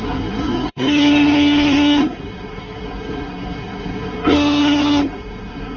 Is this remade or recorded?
remade